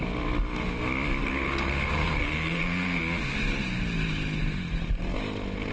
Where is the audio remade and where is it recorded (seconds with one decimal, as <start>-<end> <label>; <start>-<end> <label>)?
0.0-1.2 recorded; 1.2-3.0 remade; 3.0-5.7 recorded